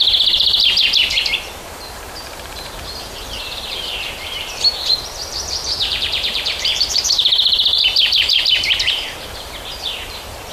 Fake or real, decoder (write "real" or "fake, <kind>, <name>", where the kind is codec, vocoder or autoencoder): fake, vocoder, BigVGAN v2